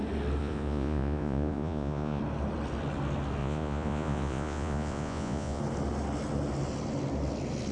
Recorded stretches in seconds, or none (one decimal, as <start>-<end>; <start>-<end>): 0.0-0.4; 2.2-3.4; 5.6-7.7